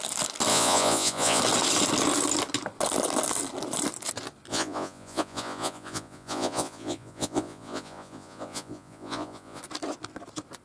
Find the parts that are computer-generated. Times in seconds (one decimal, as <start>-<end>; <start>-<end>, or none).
0.5-1.4; 4.5-9.6